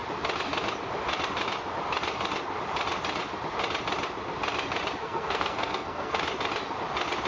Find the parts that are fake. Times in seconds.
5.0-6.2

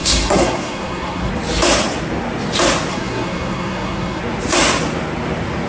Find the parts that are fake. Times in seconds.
0.0-1.3; 2.9-4.2

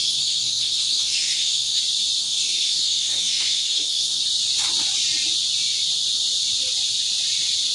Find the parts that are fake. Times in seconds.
0.0-1.8; 2.2-4.2

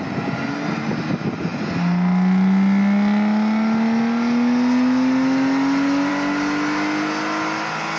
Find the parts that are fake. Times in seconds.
none

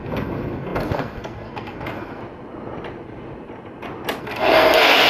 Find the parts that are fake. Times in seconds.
0.0-2.2; 4.2-5.1

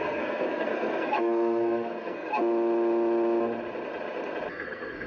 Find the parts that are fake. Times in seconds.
0.0-2.3; 4.5-5.1